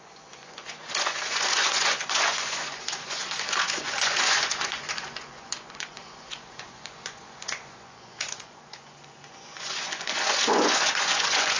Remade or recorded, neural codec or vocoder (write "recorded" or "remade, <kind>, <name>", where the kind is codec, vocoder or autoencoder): remade, vocoder, Vocos